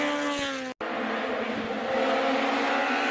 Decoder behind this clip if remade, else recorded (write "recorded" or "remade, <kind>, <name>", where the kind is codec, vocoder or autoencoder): recorded